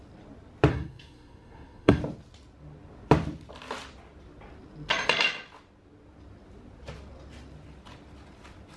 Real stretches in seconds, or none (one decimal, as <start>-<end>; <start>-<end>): 0.0-0.7; 2.0-8.8